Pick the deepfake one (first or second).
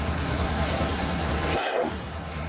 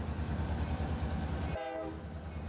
first